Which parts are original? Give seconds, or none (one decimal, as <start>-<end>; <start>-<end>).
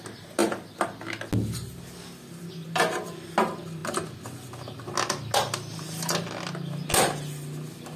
0.0-8.0